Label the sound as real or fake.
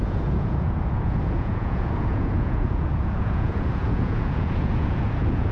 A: fake